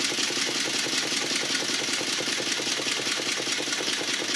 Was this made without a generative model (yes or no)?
yes